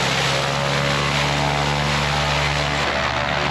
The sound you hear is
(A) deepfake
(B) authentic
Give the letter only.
B